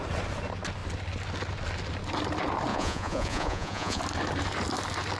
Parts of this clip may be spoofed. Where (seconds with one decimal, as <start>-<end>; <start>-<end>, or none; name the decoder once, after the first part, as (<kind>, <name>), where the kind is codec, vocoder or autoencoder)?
2.7-4.0 (vocoder, Vocos)